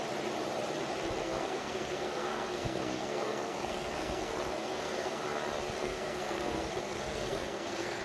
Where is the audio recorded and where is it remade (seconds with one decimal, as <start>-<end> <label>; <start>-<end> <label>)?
0.0-1.2 recorded; 1.2-5.2 remade; 5.2-5.8 recorded; 5.8-8.0 remade

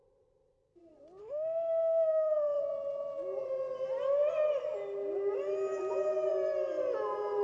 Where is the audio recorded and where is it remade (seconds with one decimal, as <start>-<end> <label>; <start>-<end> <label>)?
0.0-1.2 recorded; 1.2-2.6 remade; 2.6-7.4 recorded

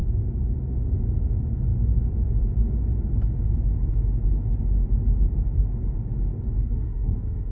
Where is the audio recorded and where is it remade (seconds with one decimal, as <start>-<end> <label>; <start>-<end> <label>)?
0.0-6.6 recorded; 6.6-7.5 remade

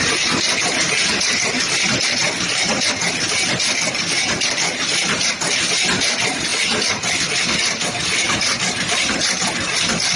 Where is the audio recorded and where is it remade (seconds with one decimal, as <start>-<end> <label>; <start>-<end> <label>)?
0.0-10.2 recorded

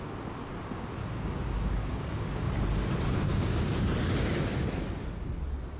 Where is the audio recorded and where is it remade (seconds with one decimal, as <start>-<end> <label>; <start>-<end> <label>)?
0.0-1.0 recorded; 1.0-2.5 remade; 2.5-3.3 recorded; 3.3-3.9 remade; 3.9-5.8 recorded